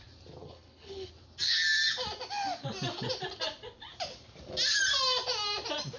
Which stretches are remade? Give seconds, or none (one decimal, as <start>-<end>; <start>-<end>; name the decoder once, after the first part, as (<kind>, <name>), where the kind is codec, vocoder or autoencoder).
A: 0.4-1.1 (codec, HILCodec)